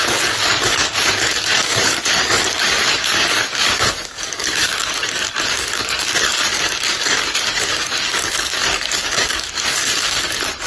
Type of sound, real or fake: fake